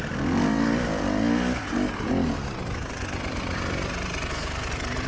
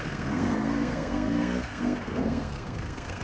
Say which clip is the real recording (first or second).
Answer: first